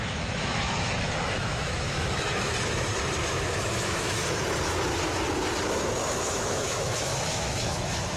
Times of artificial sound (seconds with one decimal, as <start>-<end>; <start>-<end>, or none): 0.0-2.5; 3.3-4.2; 6.1-8.2